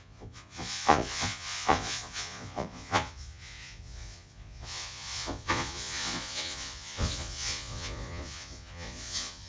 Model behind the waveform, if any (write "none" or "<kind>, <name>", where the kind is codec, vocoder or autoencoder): vocoder, Vocos